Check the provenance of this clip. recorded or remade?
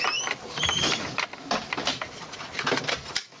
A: recorded